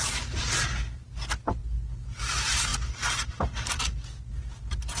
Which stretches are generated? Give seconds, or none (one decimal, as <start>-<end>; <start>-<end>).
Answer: none